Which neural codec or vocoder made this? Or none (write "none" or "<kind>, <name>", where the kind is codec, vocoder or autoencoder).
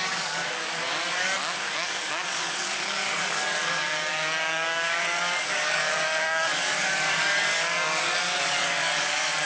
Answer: codec, DAC